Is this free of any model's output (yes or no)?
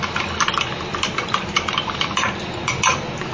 yes